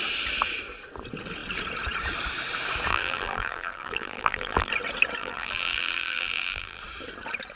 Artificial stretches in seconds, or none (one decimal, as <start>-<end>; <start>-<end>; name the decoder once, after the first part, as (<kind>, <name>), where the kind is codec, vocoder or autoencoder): 2.9-4.7 (vocoder, BigVGAN v2); 5.2-6.8